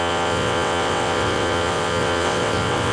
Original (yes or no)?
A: no